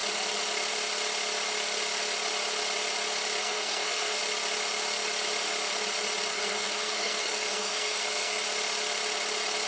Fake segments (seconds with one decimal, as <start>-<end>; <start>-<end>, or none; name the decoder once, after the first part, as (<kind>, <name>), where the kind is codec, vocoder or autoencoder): 3.4-4.2 (codec, SNAC); 6.3-8.4